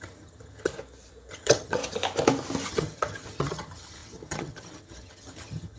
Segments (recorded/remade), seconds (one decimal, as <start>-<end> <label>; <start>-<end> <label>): 0.0-0.7 remade; 0.7-1.3 recorded; 1.3-1.8 remade; 1.8-2.7 recorded; 2.7-5.8 remade